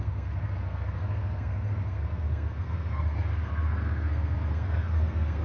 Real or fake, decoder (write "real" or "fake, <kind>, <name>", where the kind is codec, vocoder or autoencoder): fake, codec, SNAC